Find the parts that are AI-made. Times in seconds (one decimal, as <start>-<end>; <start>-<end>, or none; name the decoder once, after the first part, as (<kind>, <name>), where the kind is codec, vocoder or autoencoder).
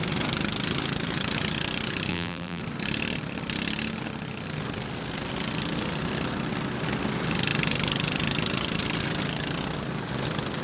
2.1-2.6 (vocoder, BigVGAN v2)